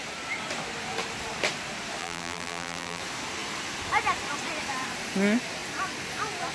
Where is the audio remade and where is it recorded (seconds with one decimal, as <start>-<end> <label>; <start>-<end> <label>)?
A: 0.0-2.0 recorded; 2.0-3.0 remade; 3.0-6.5 recorded